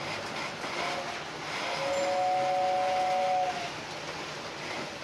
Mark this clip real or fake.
real